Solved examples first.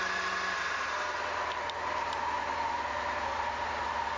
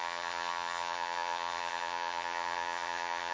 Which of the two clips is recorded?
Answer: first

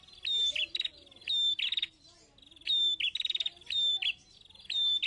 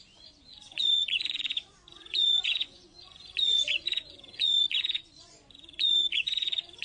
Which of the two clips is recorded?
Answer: first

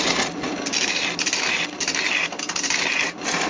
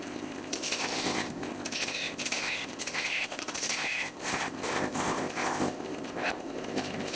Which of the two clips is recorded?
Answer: first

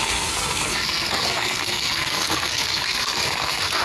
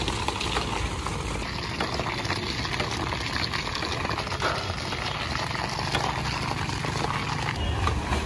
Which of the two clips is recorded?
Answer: second